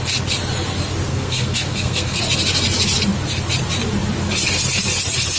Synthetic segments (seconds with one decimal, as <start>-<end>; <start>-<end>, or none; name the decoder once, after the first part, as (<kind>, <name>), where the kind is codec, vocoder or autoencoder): 1.1-2.2 (codec, SNAC)